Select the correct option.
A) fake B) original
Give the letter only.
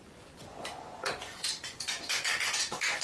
A